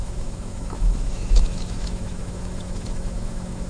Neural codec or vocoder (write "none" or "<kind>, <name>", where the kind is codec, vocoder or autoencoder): autoencoder, DAC-VAE